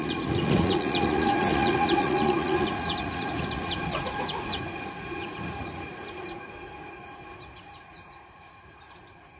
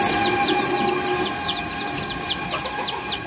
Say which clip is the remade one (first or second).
first